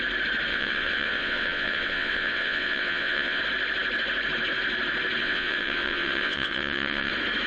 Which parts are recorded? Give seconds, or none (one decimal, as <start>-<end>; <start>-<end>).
0.0-0.5; 3.4-5.2; 7.1-7.5